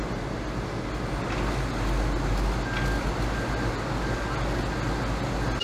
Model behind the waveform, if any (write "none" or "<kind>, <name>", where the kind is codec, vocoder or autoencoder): none